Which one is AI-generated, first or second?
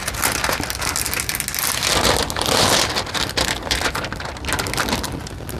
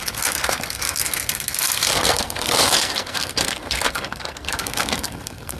second